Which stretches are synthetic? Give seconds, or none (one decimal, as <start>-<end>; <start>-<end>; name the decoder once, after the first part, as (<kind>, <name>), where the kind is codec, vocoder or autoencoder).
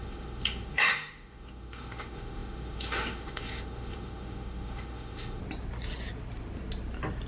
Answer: 0.0-5.4 (autoencoder, DAC-VAE)